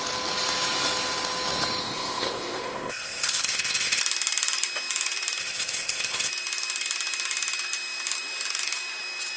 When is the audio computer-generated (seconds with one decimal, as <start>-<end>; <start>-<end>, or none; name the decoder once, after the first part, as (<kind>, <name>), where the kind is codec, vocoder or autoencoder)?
1.8-4.0 (codec, ZipCodec); 5.4-6.3